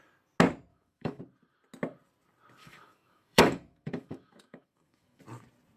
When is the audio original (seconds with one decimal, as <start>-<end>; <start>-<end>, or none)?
0.0-0.7; 1.2-2.6; 5.2-5.8